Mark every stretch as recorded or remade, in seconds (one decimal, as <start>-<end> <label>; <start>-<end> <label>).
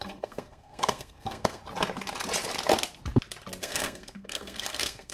0.0-1.6 remade; 1.6-3.6 recorded; 3.6-5.1 remade